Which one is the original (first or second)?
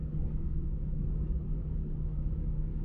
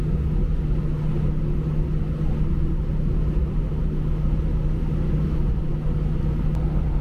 second